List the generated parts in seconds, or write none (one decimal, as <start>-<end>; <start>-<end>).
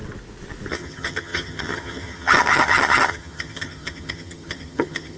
0.7-5.2